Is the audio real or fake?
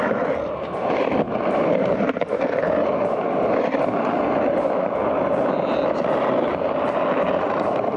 real